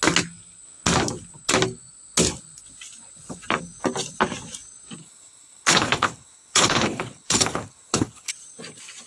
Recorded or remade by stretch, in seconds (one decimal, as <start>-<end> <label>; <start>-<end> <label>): 0.0-5.0 recorded; 5.0-8.3 remade; 8.3-9.1 recorded

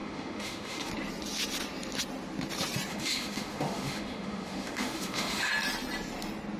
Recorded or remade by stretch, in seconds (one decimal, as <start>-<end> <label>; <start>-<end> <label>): 0.0-0.9 remade; 0.9-2.9 recorded; 2.9-5.5 remade; 5.5-6.6 recorded

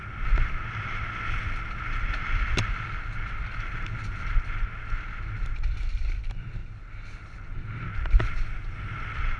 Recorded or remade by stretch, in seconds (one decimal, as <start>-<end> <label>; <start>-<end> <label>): 0.0-9.4 recorded

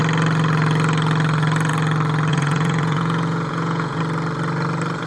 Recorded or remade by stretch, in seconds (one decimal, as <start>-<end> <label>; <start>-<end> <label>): 0.0-2.3 recorded; 2.3-4.0 remade; 4.0-5.1 recorded

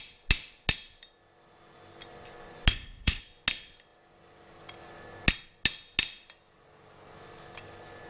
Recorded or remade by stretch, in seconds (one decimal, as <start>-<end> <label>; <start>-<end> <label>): 0.0-2.7 recorded; 2.7-3.2 remade; 3.2-8.1 recorded

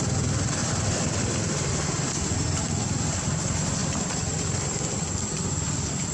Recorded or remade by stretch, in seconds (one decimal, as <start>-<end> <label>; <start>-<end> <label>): 0.0-3.8 recorded; 3.8-6.1 remade

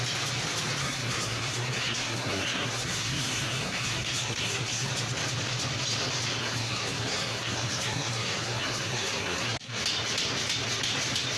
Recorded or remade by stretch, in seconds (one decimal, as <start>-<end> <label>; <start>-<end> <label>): 0.0-0.8 recorded; 0.8-4.9 remade; 4.9-6.4 recorded; 6.4-9.8 remade; 9.8-11.4 recorded

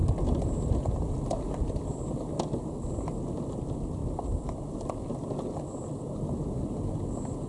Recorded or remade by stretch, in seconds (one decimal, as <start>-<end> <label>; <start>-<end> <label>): 0.0-7.5 recorded